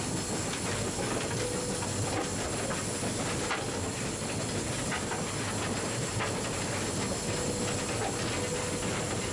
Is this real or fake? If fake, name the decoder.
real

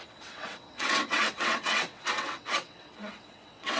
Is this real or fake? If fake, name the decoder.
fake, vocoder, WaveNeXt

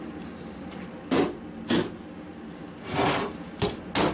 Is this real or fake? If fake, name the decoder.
real